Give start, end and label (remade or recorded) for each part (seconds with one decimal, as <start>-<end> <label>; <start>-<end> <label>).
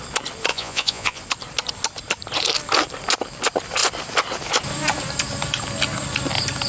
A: 0.0-0.5 recorded; 0.5-1.2 remade; 1.2-6.7 recorded